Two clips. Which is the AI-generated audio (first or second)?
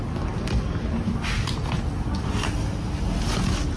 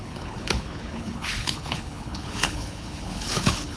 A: second